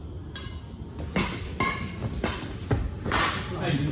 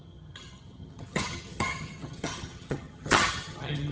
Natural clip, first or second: first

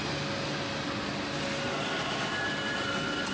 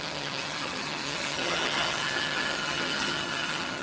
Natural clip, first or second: first